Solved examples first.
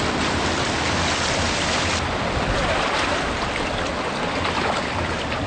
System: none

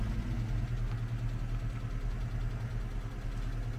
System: none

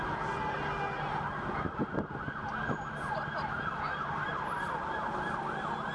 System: none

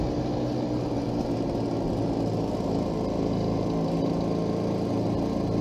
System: none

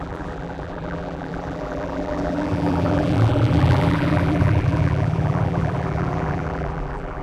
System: vocoder, BigVGAN v2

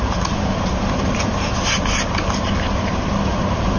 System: vocoder, BigVGAN v2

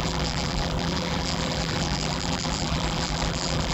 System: vocoder, BigVGAN v2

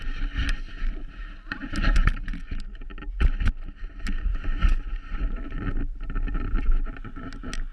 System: none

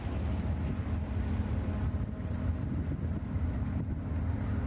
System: none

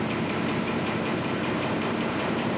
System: vocoder, BigVGAN v2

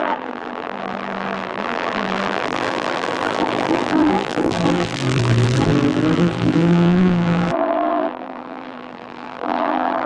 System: vocoder, BigVGAN v2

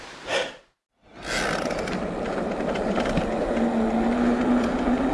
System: none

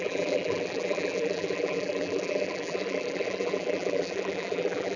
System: vocoder, BigVGAN v2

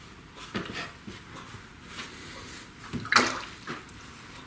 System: none